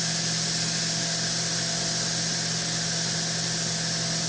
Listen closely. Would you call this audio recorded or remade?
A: recorded